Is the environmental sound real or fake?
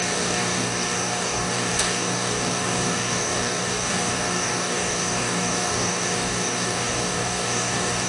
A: fake